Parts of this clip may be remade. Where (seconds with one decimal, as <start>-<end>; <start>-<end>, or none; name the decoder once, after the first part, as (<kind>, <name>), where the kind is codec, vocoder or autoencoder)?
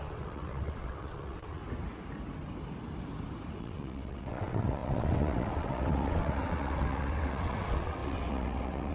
0.0-1.6 (vocoder, WaveNeXt); 3.6-8.9